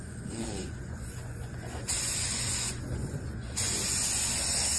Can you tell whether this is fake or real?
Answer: fake